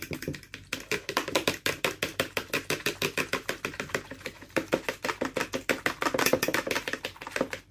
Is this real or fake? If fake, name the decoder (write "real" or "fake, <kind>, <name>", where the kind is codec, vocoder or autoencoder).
real